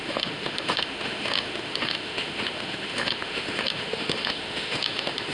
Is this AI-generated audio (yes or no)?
yes